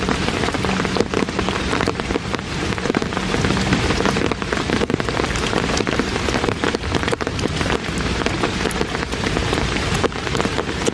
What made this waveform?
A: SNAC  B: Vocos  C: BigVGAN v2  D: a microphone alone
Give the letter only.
C